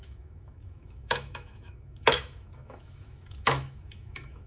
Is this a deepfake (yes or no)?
yes